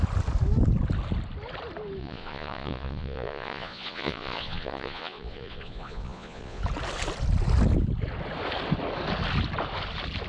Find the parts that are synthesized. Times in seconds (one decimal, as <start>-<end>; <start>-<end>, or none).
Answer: 2.0-6.6